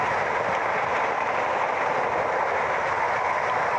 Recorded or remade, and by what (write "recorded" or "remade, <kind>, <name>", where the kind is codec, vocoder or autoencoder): recorded